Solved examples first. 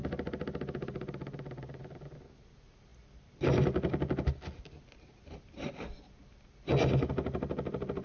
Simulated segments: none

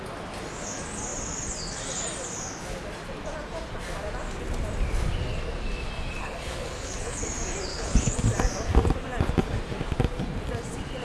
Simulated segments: 6.2-7.2 (codec, HILCodec); 7.7-8.2

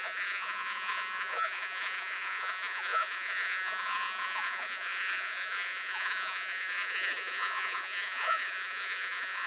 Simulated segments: 0.0-9.5 (vocoder, Vocos)

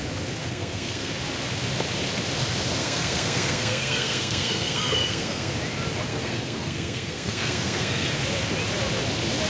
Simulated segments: 0.4-1.1 (codec, SNAC); 2.8-5.5; 6.1-8.1

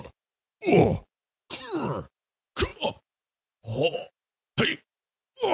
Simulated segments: none